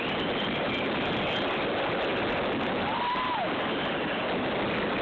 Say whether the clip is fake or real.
real